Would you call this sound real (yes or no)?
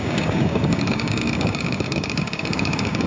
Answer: no